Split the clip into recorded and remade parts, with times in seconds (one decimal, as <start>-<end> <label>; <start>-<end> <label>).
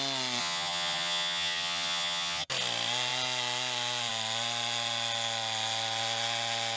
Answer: 0.0-0.4 recorded; 0.4-2.5 remade; 2.5-6.8 recorded